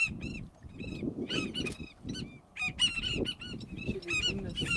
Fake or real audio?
real